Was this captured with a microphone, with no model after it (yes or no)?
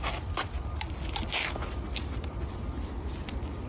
yes